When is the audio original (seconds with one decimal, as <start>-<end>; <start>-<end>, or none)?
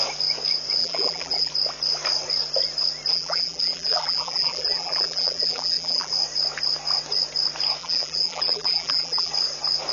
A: 0.0-0.8; 1.5-3.1; 6.1-7.8; 9.3-9.9